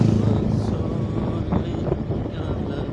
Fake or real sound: real